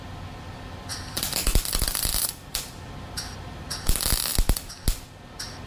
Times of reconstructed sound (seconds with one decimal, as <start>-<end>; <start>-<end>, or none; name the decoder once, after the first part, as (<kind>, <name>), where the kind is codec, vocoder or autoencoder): 0.9-3.9 (vocoder, BigVGAN v2)